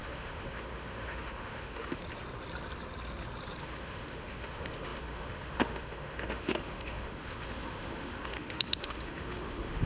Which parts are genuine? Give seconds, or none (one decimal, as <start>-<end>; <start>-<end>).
2.0-3.6